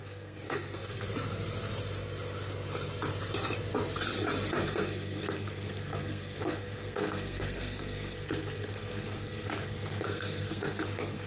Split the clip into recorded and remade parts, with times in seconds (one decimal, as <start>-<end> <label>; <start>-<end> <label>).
0.0-1.1 remade; 1.1-4.6 recorded; 4.6-11.3 remade